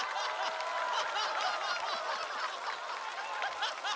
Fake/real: real